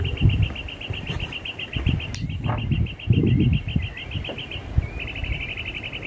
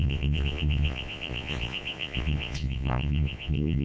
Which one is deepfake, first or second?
second